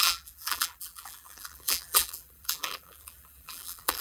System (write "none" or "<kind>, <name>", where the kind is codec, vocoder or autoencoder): vocoder, BigVGAN v2